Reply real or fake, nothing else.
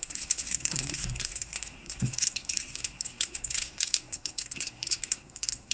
fake